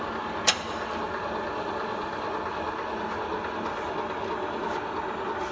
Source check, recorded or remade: recorded